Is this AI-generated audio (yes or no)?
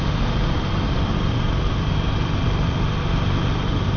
no